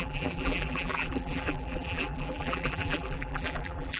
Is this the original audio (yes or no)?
no